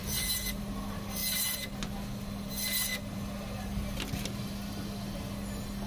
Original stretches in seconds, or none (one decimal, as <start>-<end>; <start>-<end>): 0.6-5.9